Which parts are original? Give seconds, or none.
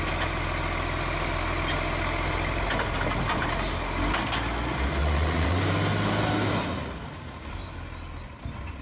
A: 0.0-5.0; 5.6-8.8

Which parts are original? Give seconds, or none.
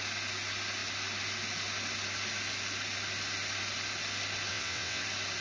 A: 0.0-4.5; 5.0-5.4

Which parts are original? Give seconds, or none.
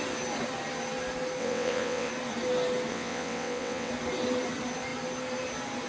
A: 0.0-1.4; 2.1-2.9; 3.9-5.9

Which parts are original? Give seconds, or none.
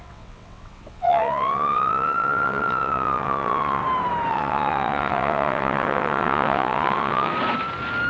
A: 3.8-4.3; 7.3-8.1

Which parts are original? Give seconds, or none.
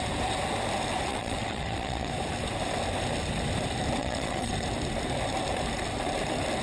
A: 0.0-1.1; 2.1-4.0; 4.5-6.6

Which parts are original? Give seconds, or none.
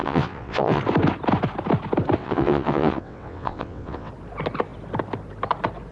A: 0.8-2.2; 4.1-5.9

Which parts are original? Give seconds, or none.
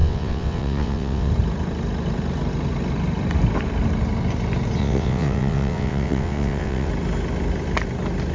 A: 1.3-4.8; 6.9-8.3